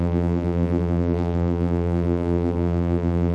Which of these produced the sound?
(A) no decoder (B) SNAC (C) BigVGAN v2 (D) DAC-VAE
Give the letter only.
C